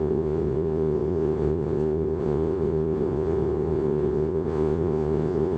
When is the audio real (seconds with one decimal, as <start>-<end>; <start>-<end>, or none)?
none